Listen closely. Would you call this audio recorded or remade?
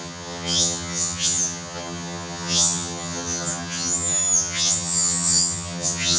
remade